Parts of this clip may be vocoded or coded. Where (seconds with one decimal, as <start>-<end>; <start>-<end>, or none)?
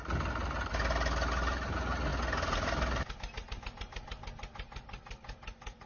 none